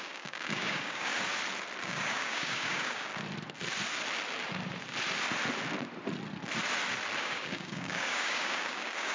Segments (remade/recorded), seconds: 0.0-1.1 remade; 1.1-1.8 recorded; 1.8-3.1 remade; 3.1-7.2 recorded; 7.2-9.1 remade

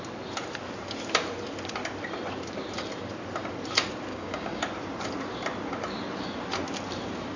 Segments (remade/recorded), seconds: 0.0-4.1 recorded; 4.1-4.6 remade; 4.6-7.4 recorded

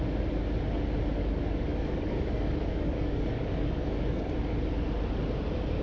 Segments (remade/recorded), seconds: 0.0-1.2 recorded; 1.2-4.3 remade; 4.3-5.8 recorded